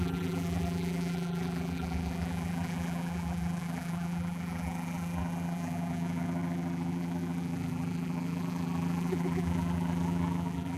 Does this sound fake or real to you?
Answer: fake